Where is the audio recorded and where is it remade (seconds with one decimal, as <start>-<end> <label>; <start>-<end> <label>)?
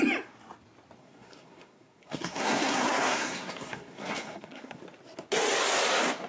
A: 0.0-1.0 recorded; 1.0-4.8 remade; 4.8-6.3 recorded